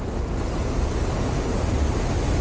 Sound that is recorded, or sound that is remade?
recorded